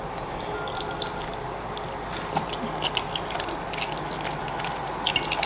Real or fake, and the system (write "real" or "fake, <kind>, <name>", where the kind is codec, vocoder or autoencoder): real